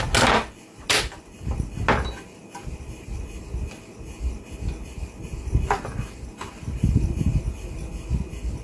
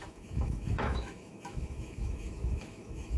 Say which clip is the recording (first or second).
first